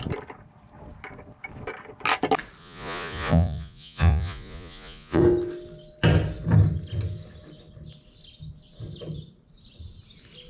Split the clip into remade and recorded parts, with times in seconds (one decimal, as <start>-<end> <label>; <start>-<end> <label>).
0.0-2.6 recorded; 2.6-5.2 remade; 5.2-10.5 recorded